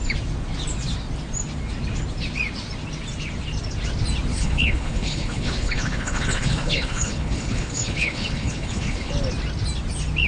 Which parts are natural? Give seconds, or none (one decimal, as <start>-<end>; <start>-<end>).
0.0-4.3; 9.1-10.3